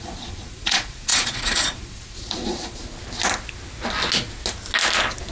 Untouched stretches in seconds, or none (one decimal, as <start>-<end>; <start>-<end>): 2.8-5.3